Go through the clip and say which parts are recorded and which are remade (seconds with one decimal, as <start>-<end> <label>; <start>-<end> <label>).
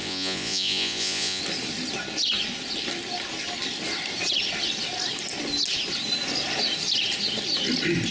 0.0-1.4 remade; 1.4-8.1 recorded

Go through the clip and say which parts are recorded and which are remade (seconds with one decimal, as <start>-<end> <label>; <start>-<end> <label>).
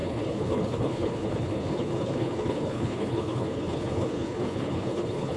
0.0-5.4 remade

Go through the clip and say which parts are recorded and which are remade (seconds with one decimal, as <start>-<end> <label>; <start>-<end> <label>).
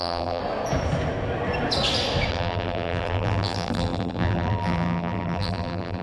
0.0-0.4 remade; 0.4-2.3 recorded; 2.3-6.0 remade